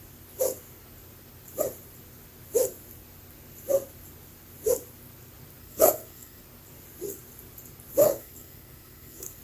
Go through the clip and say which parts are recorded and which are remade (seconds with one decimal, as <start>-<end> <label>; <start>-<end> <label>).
0.0-5.6 recorded; 5.6-6.4 remade; 6.4-8.0 recorded; 8.0-9.4 remade